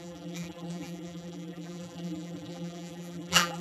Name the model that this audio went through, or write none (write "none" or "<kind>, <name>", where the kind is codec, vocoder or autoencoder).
vocoder, BigVGAN v2